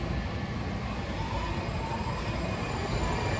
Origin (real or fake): real